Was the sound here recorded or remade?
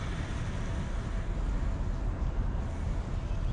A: recorded